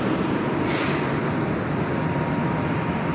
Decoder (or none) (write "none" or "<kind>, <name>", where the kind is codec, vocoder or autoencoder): none